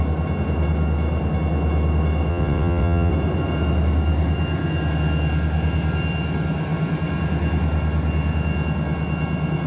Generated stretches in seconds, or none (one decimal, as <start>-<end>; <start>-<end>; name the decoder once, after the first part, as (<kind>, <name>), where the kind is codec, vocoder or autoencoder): 2.3-3.1 (vocoder, WaveNeXt)